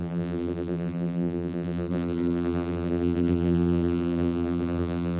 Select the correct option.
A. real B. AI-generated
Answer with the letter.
B